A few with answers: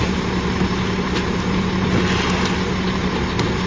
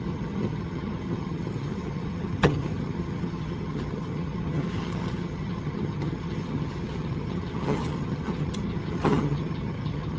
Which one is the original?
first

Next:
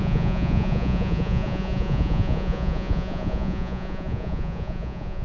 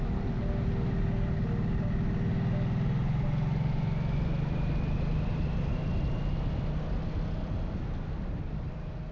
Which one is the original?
second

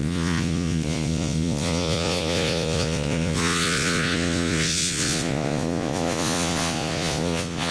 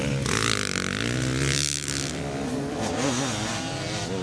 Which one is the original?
second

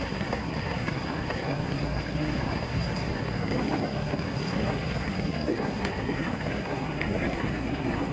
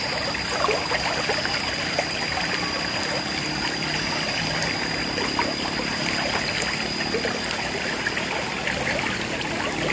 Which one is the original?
second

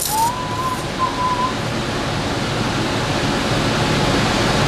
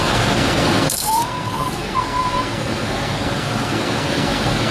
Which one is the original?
first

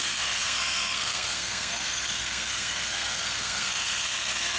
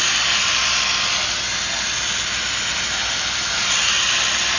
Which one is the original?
second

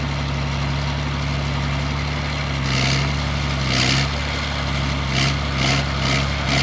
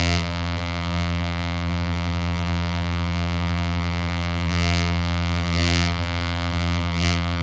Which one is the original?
first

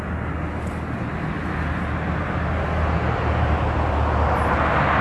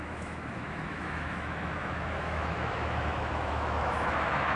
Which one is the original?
first